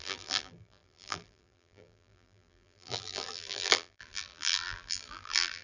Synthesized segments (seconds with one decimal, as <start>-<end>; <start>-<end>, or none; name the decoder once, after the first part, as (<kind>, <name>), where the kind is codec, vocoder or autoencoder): 0.0-5.6 (vocoder, BigVGAN v2)